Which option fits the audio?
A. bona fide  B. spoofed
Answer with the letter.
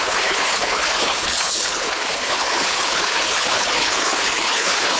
B